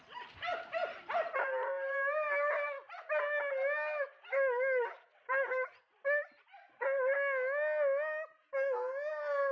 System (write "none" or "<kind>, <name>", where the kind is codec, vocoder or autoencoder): none